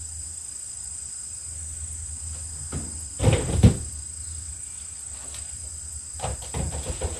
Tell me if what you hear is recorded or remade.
recorded